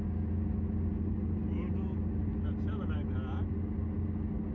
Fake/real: real